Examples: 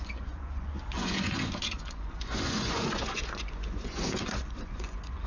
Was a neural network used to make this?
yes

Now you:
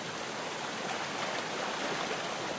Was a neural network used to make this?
no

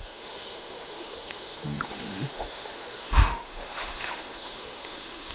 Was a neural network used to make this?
yes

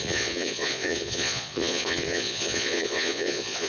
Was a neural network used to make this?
yes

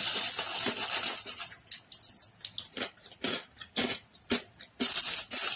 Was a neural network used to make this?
no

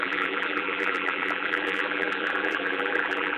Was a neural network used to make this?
yes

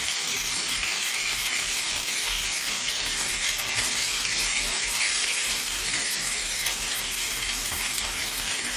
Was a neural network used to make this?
yes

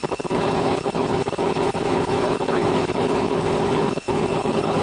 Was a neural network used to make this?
yes